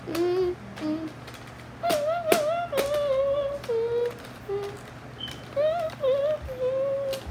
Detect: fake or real real